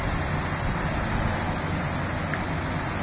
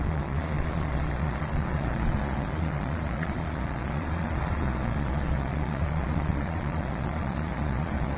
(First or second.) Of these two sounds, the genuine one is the first